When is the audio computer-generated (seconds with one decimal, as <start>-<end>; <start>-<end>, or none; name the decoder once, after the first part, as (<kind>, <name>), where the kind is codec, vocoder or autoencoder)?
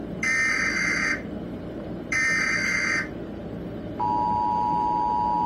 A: 0.0-2.3 (vocoder, BigVGAN v2)